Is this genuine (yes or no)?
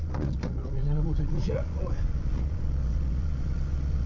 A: no